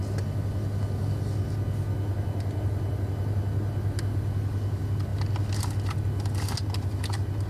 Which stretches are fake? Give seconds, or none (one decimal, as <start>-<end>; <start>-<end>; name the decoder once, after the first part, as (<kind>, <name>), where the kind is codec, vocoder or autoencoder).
none

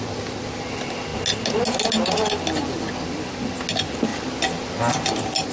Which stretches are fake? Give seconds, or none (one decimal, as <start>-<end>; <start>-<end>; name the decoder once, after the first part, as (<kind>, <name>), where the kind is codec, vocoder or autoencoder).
none

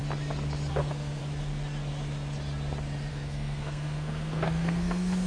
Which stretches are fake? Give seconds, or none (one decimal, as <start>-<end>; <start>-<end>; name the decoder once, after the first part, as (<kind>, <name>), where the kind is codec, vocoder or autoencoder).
0.7-1.2 (codec, SNAC); 3.1-5.3

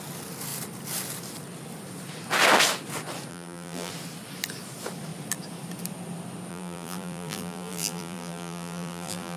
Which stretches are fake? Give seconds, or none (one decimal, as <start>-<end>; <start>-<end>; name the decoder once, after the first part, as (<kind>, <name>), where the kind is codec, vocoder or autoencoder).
3.3-3.9 (vocoder, BigVGAN v2); 6.5-9.4

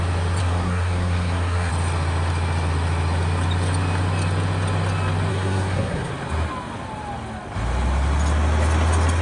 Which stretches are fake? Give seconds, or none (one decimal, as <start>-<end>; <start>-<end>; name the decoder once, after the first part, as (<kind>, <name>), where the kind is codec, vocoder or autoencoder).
0.4-1.7 (codec, SNAC); 5.3-6.1